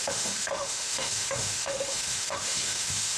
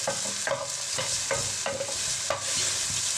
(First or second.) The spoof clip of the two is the first